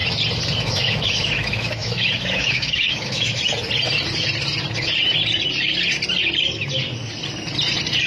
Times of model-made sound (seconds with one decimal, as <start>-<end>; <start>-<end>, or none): 0.6-3.4